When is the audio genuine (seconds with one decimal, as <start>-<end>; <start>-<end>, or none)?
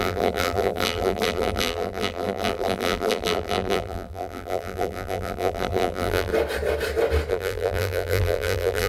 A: 6.3-7.3